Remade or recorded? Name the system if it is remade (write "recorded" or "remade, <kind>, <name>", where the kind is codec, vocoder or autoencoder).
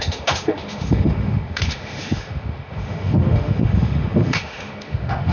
remade, autoencoder, DAC-VAE